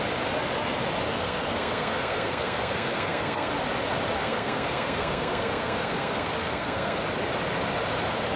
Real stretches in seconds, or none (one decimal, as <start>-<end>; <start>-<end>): 0.0-1.2; 3.5-4.2; 7.0-8.4